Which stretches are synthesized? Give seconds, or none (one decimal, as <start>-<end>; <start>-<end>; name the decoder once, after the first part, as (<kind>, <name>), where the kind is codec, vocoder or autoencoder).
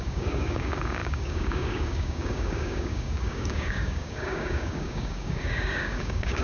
0.0-6.4 (codec, DAC)